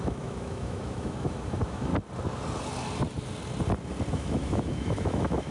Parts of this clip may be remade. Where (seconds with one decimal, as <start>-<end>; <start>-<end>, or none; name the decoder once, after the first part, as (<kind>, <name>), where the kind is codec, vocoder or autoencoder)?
0.0-1.9 (autoencoder, DAC-VAE); 4.1-5.5